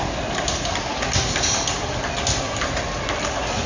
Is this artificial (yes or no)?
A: no